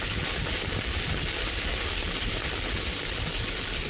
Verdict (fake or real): real